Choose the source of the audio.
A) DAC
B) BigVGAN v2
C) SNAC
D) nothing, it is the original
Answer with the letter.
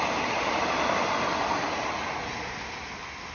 D